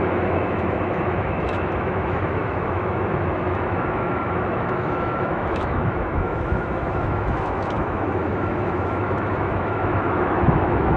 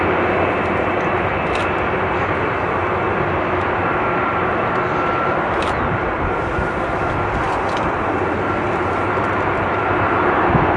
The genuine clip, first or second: second